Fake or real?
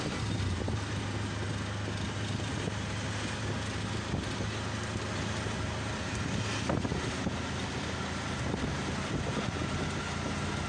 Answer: real